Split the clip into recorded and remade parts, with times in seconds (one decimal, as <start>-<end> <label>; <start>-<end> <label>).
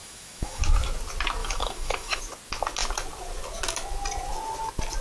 0.0-0.6 remade; 0.6-1.4 recorded; 1.4-2.2 remade; 2.2-5.0 recorded